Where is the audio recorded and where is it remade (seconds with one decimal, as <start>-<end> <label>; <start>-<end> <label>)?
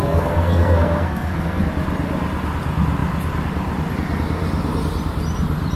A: 0.0-1.6 remade; 1.6-5.8 recorded